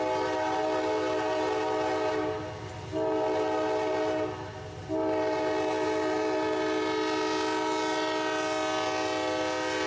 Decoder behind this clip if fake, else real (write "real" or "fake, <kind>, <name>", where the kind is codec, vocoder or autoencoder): real